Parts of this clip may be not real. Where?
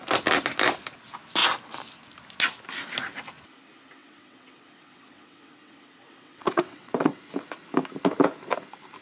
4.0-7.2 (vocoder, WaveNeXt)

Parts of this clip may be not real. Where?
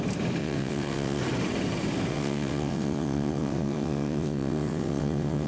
0.4-1.2 (vocoder, WaveNeXt); 2.1-5.5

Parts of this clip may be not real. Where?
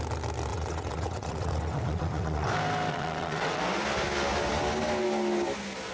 0.5-2.5 (vocoder, WaveNeXt); 2.9-3.6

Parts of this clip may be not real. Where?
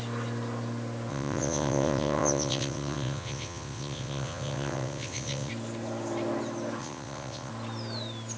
1.1-5.5 (vocoder, WaveNeXt); 6.8-7.5